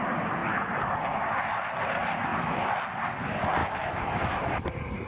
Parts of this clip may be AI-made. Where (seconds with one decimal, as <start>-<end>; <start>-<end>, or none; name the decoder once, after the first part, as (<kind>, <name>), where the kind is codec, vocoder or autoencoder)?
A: 2.3-2.8 (autoencoder, DAC-VAE); 3.6-4.2